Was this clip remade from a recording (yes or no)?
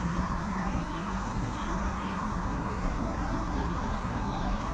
yes